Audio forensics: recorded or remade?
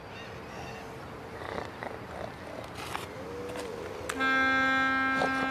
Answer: recorded